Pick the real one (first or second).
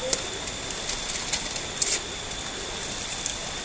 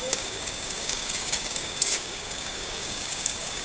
first